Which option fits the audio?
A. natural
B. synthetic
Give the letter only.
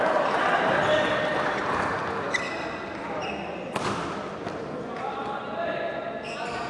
A